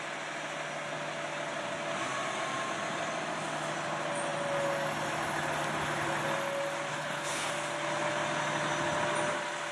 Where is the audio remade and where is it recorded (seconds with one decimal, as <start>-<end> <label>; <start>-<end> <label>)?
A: 0.0-6.9 recorded; 6.9-7.5 remade; 7.5-9.7 recorded